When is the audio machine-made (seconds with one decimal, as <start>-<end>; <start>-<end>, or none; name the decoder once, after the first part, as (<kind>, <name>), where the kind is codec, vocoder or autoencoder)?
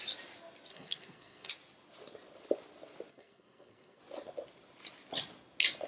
0.7-1.5 (codec, SNAC); 3.1-4.0